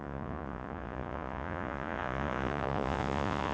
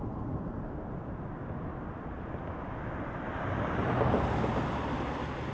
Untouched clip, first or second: second